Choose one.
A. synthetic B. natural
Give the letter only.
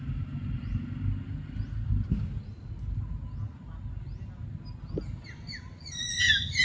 B